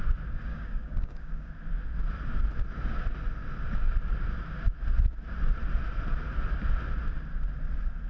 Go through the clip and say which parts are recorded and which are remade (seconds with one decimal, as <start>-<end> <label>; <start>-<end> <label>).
0.0-0.5 recorded; 0.5-1.5 remade; 1.5-8.1 recorded

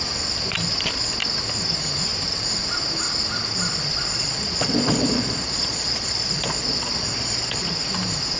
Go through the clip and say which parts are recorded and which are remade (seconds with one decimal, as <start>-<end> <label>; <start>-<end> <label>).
0.0-3.7 recorded; 3.7-7.7 remade; 7.7-8.4 recorded